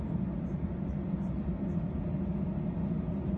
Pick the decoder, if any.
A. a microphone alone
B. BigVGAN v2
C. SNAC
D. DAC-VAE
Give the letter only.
A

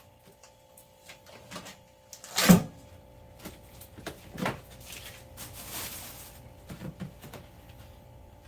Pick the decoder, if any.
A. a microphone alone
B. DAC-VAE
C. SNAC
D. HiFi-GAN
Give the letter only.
A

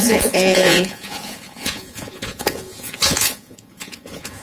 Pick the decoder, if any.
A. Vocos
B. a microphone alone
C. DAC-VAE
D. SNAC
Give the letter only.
A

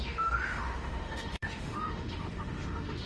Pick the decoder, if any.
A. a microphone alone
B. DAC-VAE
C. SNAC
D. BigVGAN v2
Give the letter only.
B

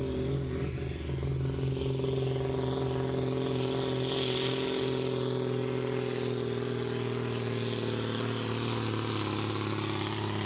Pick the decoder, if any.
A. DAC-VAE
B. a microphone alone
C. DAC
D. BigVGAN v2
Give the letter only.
B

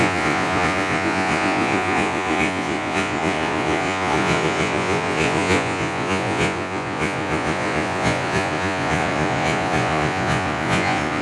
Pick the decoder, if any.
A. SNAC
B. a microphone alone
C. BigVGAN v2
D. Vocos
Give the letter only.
D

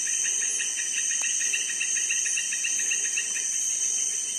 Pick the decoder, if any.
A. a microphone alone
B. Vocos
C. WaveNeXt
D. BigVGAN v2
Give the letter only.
A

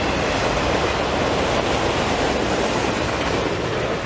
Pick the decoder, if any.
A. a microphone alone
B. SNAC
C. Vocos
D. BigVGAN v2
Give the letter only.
A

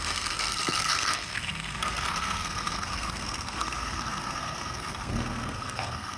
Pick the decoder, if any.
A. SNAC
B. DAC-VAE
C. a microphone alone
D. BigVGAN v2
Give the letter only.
A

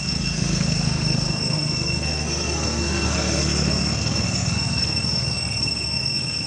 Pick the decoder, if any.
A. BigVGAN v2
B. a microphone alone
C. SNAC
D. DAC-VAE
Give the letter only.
C